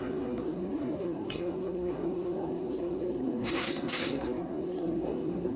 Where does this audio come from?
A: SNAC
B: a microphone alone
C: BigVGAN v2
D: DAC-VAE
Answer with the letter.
A